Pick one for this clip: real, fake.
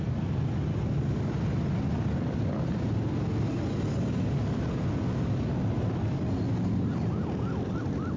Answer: real